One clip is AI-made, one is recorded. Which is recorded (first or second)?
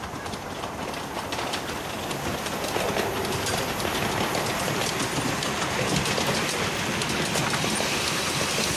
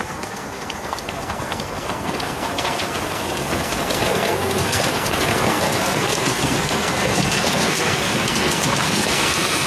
first